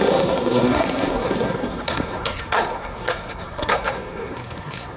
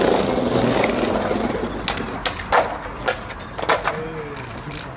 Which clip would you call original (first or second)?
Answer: second